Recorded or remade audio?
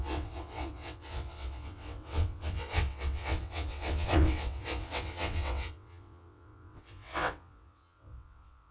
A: remade